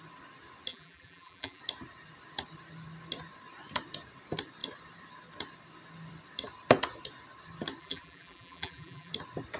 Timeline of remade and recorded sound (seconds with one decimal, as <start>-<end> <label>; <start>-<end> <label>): 0.0-0.7 recorded; 0.7-1.6 remade; 1.6-7.8 recorded; 7.8-9.1 remade; 9.1-9.6 recorded